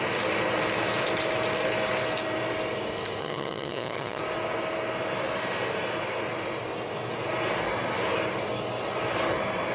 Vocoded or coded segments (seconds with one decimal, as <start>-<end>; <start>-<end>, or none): 3.2-4.2